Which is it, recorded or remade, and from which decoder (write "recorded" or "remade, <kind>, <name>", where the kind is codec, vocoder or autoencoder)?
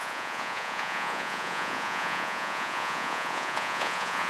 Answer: remade, vocoder, Vocos